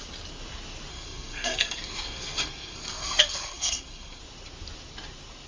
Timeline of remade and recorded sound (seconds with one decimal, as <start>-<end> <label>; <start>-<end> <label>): 0.0-0.9 recorded; 0.9-4.2 remade; 4.2-5.5 recorded